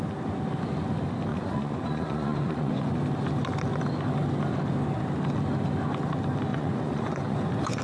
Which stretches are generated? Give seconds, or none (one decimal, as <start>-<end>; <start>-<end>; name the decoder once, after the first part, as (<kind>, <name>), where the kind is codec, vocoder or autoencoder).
1.3-3.0 (vocoder, Vocos); 6.5-7.8

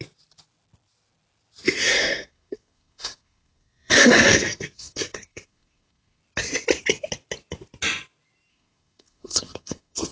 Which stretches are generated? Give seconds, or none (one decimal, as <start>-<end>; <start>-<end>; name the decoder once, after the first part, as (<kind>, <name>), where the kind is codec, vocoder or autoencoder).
1.8-6.2 (codec, SNAC); 8.5-10.1

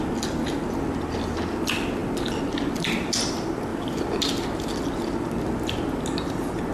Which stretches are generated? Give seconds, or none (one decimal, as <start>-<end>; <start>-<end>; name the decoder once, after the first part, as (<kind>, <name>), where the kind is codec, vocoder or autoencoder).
none

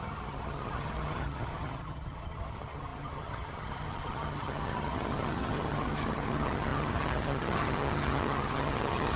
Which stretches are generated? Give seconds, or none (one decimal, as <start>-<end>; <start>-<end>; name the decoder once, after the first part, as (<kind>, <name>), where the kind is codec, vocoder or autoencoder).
0.0-9.2 (vocoder, HiFi-GAN)

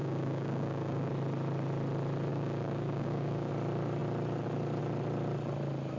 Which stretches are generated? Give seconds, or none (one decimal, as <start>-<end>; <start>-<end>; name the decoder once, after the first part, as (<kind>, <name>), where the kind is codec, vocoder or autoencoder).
0.0-1.1 (codec, DAC); 2.3-3.5

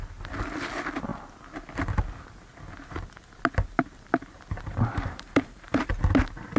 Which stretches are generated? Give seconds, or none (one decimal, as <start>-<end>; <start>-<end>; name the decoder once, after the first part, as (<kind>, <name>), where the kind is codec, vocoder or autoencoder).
4.7-5.9 (vocoder, BigVGAN v2)

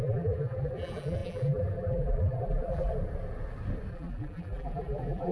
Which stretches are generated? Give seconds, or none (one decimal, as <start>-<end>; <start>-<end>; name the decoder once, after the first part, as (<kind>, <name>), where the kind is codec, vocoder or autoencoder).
0.0-2.9 (vocoder, BigVGAN v2); 3.9-5.3